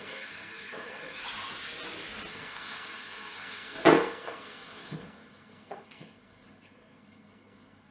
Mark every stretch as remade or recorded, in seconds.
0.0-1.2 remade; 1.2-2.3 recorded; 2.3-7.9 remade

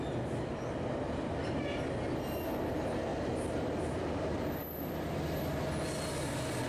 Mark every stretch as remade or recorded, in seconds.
0.0-6.7 recorded

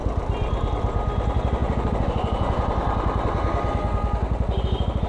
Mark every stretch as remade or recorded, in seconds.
0.0-5.1 recorded

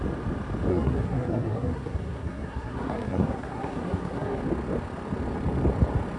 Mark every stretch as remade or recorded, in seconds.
0.0-0.7 recorded; 0.7-4.4 remade; 4.4-6.2 recorded

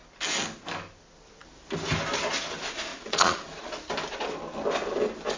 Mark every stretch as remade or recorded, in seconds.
0.0-2.9 recorded; 2.9-3.7 remade; 3.7-5.4 recorded